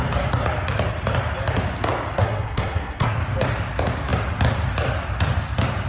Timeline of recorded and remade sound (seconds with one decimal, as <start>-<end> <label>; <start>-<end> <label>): 0.0-2.2 recorded; 2.2-3.2 remade; 3.2-5.9 recorded